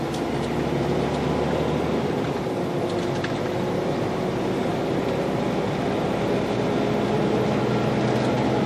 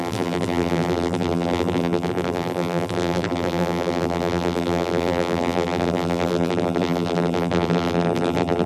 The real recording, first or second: first